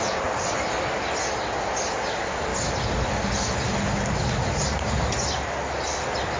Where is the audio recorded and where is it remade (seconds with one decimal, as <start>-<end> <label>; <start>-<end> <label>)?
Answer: 0.0-6.4 recorded